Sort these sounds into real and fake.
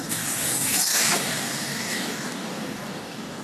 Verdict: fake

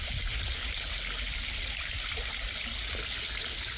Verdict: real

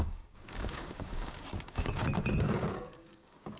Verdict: fake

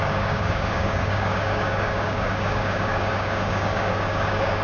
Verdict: fake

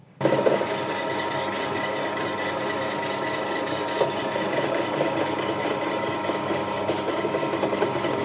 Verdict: fake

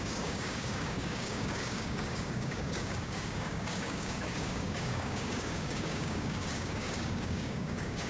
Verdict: fake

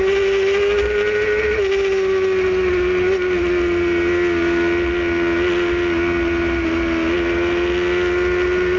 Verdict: real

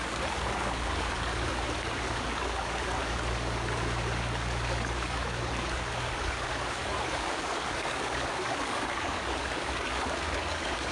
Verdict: fake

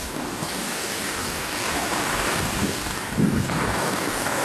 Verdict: fake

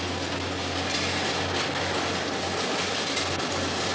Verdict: real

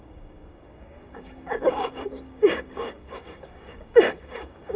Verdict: fake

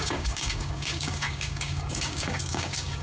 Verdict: fake